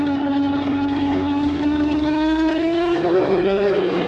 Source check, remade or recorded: remade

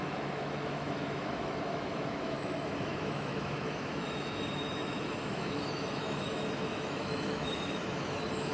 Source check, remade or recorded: remade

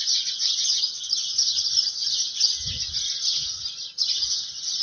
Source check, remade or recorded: recorded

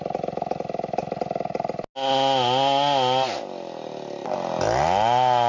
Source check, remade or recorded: recorded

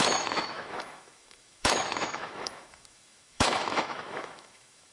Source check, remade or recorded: remade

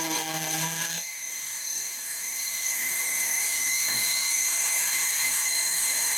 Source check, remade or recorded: remade